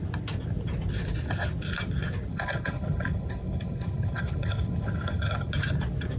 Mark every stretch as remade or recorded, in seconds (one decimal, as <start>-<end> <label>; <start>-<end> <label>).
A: 0.0-2.3 recorded; 2.3-5.5 remade; 5.5-6.2 recorded